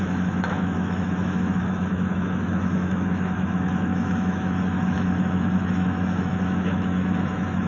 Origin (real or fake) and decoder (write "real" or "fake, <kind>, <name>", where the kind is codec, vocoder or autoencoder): fake, autoencoder, DAC-VAE